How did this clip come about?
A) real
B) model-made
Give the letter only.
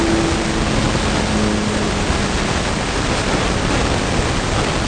A